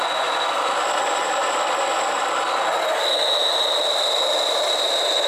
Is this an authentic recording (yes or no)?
yes